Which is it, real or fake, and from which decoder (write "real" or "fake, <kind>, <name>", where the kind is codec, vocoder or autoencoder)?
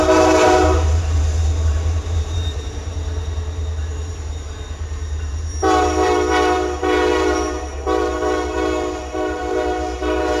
fake, vocoder, BigVGAN v2